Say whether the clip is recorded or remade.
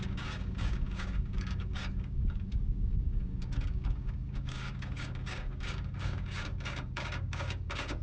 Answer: remade